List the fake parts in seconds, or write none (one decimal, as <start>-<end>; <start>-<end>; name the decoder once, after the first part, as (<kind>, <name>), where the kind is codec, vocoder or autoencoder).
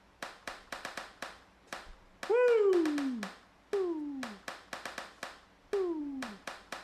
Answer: 0.0-1.9 (vocoder, BigVGAN v2); 6.0-6.8